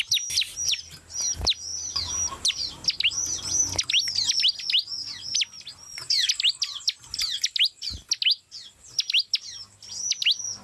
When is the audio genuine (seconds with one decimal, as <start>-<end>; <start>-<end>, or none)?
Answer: 0.0-10.6